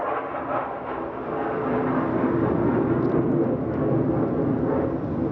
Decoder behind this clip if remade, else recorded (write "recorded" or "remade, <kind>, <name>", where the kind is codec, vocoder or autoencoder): recorded